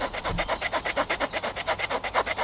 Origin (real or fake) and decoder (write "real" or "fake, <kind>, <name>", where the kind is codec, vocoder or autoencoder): real